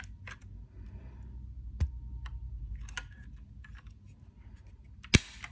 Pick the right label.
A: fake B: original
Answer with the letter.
B